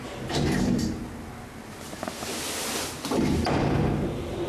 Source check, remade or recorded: recorded